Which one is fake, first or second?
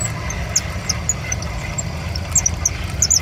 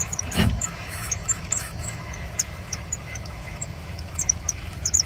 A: second